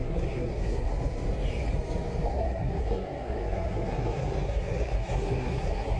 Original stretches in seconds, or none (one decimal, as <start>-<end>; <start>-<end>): 0.9-2.3